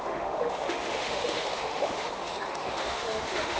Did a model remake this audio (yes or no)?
yes